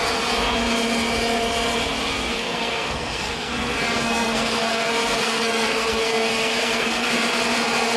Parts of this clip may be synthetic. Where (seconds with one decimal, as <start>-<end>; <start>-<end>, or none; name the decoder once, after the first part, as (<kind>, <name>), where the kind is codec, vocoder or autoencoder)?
2.3-7.1 (codec, SNAC)